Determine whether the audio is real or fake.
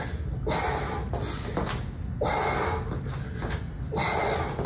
real